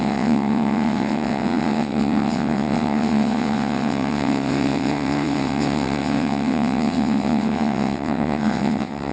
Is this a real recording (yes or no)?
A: no